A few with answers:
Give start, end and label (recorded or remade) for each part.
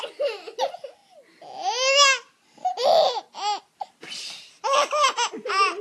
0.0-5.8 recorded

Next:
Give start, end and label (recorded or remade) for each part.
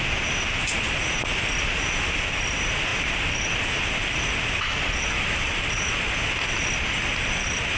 0.0-7.8 recorded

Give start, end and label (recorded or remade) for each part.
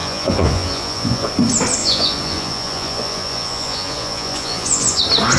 0.0-1.3 remade; 1.3-1.8 recorded; 1.8-5.0 remade; 5.0-5.4 recorded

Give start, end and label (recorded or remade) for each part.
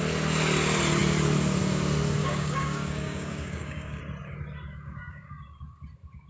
0.0-2.2 recorded; 2.2-4.0 remade; 4.0-4.7 recorded; 4.7-5.4 remade; 5.4-6.3 recorded